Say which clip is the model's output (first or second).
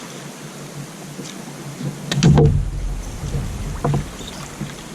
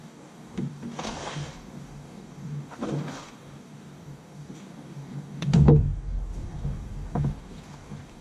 second